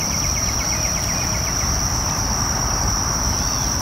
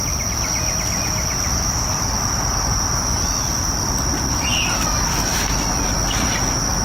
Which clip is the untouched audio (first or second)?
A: second